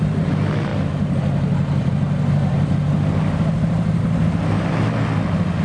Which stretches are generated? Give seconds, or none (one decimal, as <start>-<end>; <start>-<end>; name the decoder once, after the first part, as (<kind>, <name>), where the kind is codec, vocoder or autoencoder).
none